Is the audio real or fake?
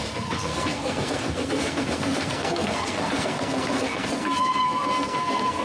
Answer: fake